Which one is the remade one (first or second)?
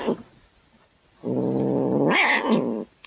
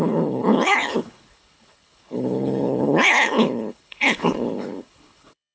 second